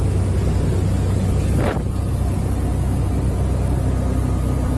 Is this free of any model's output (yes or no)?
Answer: yes